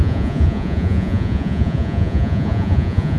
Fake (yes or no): yes